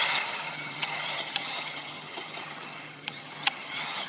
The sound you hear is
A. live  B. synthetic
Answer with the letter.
B